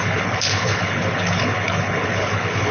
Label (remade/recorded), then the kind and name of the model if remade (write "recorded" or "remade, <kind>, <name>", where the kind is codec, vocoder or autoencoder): remade, codec, HILCodec